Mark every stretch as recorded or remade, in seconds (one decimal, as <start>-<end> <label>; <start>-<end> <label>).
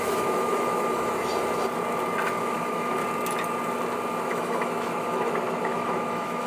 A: 0.0-1.3 remade; 1.3-2.4 recorded; 2.4-3.0 remade; 3.0-4.2 recorded; 4.2-6.5 remade